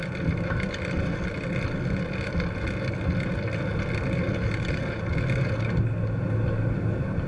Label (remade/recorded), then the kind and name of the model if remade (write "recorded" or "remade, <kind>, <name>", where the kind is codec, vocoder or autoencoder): recorded